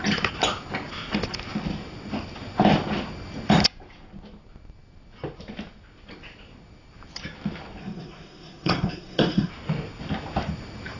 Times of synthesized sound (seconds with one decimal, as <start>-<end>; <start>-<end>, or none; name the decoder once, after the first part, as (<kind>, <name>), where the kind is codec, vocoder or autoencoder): 7.8-9.5 (codec, SNAC)